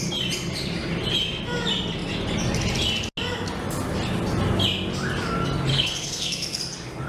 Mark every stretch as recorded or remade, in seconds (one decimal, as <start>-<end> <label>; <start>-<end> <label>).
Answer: 0.0-5.7 recorded; 5.7-6.6 remade; 6.6-7.1 recorded